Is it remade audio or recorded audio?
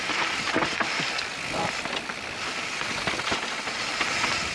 recorded